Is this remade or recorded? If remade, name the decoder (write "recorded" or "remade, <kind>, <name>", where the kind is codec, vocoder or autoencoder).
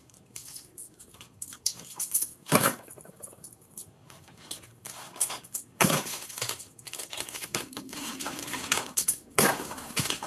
remade, codec, SNAC